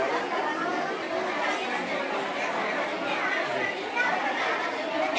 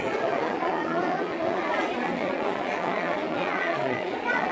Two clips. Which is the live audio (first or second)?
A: first